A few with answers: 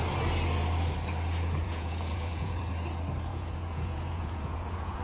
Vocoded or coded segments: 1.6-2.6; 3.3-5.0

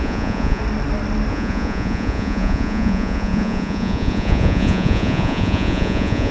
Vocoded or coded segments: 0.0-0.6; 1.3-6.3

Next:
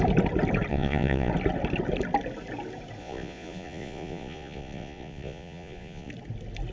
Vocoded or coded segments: 0.7-1.3; 3.0-6.1

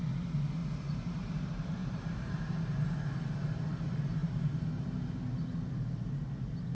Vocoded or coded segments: 0.6-2.3; 4.2-4.8